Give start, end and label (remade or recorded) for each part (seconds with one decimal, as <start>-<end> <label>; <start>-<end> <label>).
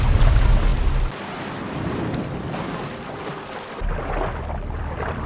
0.0-5.3 recorded